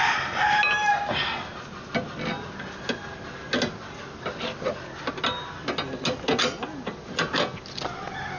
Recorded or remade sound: recorded